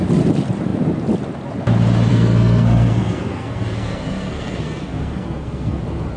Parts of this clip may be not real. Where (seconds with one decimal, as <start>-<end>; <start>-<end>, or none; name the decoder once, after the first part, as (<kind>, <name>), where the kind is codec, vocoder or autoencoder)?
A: 2.1-5.8 (codec, SNAC)

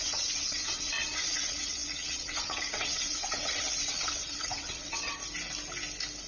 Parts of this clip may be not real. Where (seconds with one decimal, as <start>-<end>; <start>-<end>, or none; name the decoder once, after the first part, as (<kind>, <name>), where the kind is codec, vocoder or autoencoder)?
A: 0.0-5.2 (vocoder, WaveNeXt)

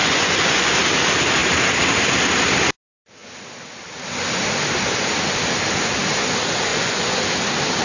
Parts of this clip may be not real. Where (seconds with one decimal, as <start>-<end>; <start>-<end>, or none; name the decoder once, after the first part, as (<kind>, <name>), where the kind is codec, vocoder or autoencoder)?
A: 0.0-0.7 (vocoder, Vocos); 6.7-7.2

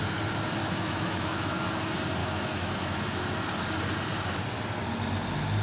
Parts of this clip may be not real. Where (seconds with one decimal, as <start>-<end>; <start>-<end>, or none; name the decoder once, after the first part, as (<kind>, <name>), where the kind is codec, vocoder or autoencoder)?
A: 0.6-1.8 (autoencoder, DAC-VAE); 2.2-3.0

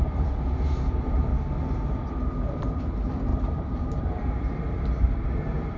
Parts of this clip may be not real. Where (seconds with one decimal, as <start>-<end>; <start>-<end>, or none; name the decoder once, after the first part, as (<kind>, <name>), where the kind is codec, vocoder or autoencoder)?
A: 0.0-1.3 (vocoder, BigVGAN v2); 2.1-5.8

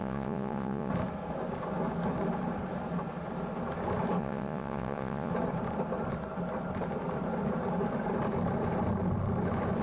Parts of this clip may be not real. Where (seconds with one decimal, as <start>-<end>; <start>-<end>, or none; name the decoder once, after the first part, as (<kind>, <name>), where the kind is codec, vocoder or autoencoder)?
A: 0.0-0.9 (vocoder, Vocos); 4.2-5.3